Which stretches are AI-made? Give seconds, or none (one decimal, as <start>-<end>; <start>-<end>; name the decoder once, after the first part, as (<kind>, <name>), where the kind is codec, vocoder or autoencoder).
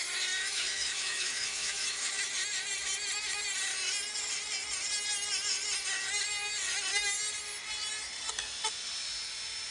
0.4-2.1 (autoencoder, DAC-VAE)